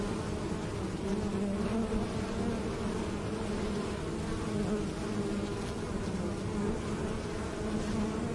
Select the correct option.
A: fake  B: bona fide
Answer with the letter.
B